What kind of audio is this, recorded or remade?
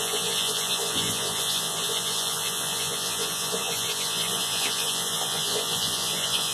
remade